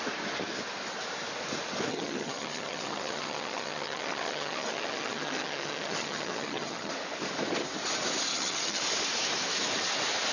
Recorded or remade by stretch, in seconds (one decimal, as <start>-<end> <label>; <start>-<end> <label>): 0.0-1.9 recorded; 1.9-6.9 remade; 6.9-8.3 recorded; 8.3-8.8 remade; 8.8-10.3 recorded